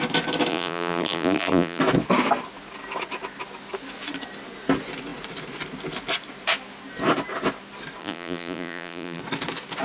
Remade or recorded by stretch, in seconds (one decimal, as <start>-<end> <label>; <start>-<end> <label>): 0.0-0.5 recorded; 0.5-1.8 remade; 1.8-8.0 recorded; 8.0-9.2 remade; 9.2-9.8 recorded